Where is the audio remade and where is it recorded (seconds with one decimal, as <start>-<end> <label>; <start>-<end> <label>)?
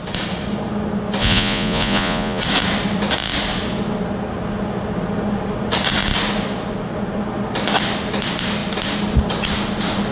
0.0-1.2 recorded; 1.2-2.4 remade; 2.4-10.1 recorded